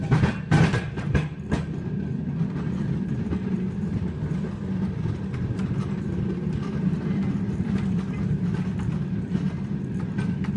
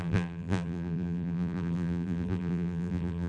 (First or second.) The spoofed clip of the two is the second